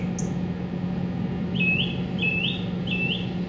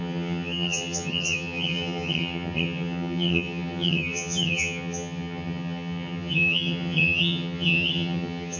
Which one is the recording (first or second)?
first